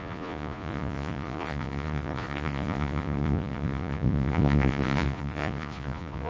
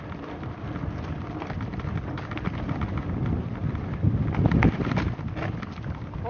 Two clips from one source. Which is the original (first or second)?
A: second